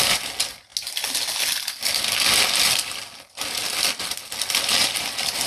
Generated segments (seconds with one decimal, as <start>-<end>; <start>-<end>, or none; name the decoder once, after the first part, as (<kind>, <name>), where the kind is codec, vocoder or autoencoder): none